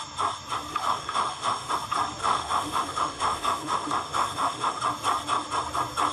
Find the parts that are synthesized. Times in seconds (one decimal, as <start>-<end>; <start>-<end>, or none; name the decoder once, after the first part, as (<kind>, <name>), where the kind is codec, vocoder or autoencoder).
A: 0.7-1.7 (autoencoder, DAC-VAE); 2.2-4.8